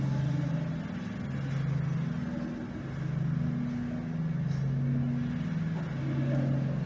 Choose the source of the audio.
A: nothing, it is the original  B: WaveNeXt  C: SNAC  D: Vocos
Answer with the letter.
A